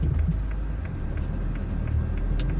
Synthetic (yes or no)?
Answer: no